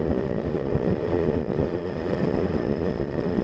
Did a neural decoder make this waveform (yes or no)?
yes